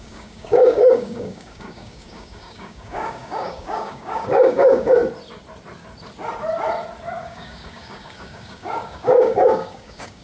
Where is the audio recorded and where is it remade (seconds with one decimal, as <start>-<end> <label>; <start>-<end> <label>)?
0.0-5.0 remade; 5.0-7.2 recorded; 7.2-10.2 remade